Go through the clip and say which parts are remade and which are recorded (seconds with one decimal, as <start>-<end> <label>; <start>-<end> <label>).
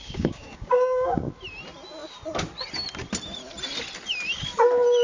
0.0-1.3 remade; 1.3-5.0 recorded